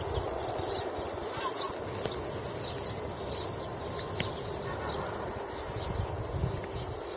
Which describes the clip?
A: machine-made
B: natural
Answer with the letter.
B